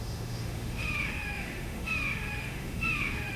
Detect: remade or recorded remade